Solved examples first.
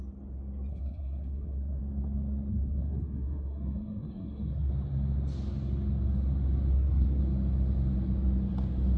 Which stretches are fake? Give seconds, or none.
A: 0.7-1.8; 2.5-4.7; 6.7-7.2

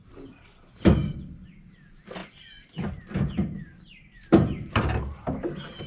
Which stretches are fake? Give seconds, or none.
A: 0.0-5.9

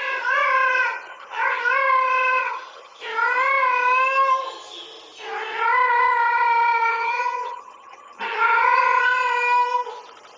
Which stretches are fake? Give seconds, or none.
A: 1.1-1.6; 2.4-3.0; 6.9-9.0

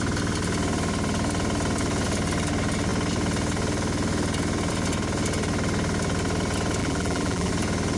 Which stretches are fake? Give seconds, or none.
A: 6.8-7.5

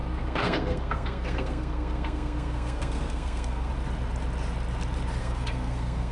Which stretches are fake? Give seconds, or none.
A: 0.0-3.7; 5.2-6.1

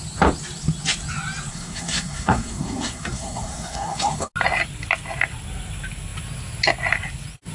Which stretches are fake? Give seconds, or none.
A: 1.5-4.3